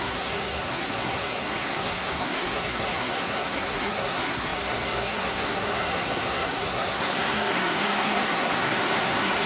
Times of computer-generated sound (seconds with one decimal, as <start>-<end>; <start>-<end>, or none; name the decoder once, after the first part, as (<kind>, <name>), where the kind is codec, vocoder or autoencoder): 0.0-9.5 (codec, SNAC)